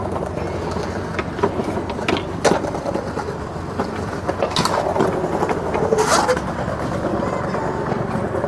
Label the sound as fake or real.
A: real